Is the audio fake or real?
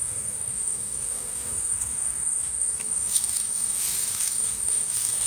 fake